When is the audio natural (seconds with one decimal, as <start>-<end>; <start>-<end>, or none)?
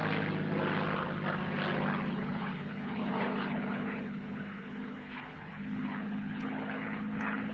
0.0-2.1